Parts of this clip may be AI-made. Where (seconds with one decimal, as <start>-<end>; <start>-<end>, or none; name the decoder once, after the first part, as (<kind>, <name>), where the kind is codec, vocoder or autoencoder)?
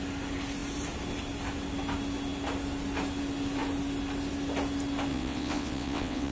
5.1-6.3 (vocoder, WaveNeXt)